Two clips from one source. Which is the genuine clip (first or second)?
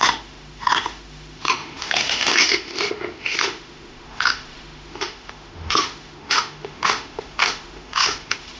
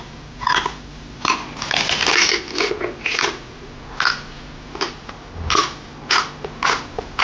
second